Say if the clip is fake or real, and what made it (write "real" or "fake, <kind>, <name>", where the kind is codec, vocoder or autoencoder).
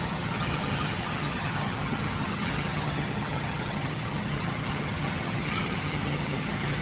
fake, vocoder, HiFi-GAN